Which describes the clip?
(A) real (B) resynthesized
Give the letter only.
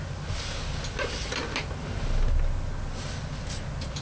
A